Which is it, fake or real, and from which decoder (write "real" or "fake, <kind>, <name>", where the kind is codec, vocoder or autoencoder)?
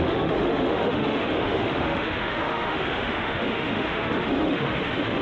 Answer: fake, autoencoder, DAC-VAE